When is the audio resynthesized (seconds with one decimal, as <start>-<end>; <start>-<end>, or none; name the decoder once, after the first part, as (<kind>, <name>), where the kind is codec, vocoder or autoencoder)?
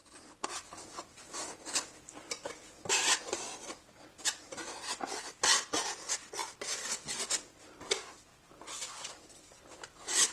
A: none